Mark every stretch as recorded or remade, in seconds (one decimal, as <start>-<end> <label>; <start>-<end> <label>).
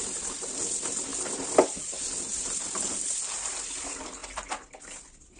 0.0-5.4 recorded